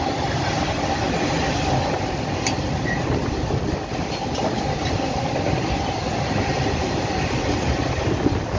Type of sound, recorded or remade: recorded